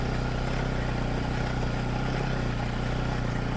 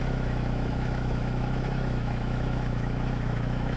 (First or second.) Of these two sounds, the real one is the first